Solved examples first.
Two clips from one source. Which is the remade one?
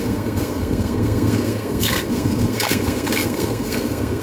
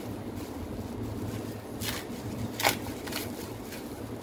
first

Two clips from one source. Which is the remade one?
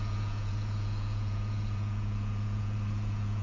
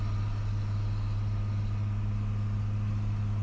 first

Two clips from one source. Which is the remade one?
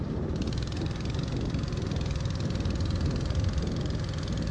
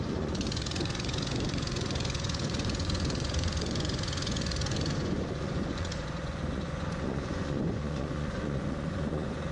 second